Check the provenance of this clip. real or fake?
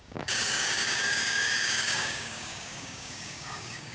fake